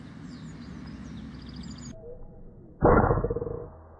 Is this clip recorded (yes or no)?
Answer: yes